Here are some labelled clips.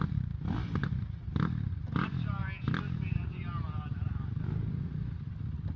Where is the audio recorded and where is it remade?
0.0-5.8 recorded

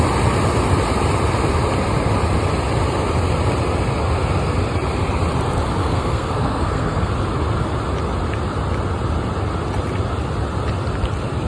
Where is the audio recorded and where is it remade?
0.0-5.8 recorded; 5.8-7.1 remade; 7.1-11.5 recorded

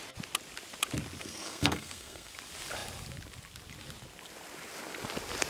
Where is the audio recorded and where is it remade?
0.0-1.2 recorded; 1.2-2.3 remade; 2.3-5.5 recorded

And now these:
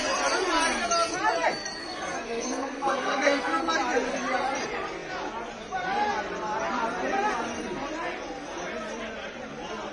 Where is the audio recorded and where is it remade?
0.0-1.8 recorded; 1.8-3.6 remade; 3.6-9.9 recorded